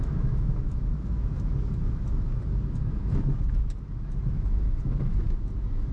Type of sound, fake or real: fake